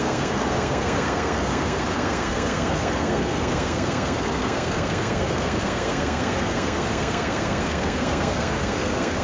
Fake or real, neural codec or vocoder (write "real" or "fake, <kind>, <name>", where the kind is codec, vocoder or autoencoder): fake, codec, SNAC